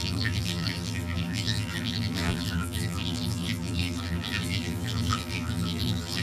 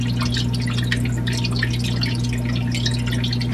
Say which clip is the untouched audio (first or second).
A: second